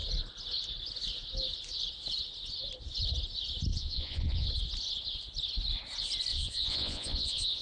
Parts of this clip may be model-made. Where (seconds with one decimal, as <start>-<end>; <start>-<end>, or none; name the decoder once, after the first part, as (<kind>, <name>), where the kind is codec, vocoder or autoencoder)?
3.7-4.5 (vocoder, Vocos); 6.3-7.6

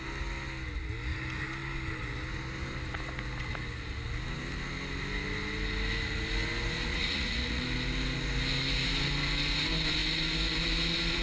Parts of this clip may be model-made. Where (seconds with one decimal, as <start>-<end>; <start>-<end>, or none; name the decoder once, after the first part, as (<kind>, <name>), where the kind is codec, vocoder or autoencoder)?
6.9-7.6 (vocoder, Vocos)

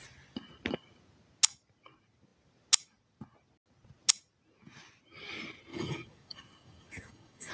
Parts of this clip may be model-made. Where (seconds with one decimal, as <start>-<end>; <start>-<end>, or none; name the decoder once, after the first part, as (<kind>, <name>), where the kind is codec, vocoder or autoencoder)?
5.7-7.5 (codec, DAC)

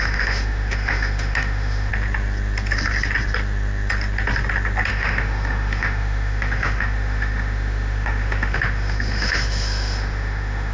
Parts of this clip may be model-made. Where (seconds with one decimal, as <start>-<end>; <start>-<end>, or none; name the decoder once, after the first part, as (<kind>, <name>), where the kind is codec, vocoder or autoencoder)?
0.0-1.9 (autoencoder, DAC-VAE); 4.9-10.7

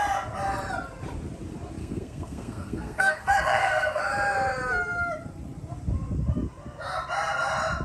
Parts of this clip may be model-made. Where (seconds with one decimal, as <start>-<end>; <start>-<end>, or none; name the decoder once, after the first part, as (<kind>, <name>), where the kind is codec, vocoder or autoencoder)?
1.8-4.0 (codec, SNAC)